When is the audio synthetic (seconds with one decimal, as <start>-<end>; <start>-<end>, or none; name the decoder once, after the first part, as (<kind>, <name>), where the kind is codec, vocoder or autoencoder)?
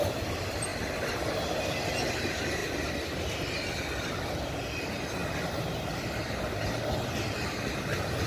none